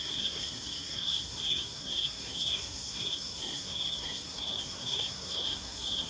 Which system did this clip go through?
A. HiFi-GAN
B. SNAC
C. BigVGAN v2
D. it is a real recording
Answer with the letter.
B